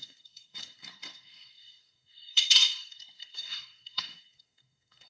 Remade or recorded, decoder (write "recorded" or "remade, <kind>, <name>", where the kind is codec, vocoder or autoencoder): remade, codec, SNAC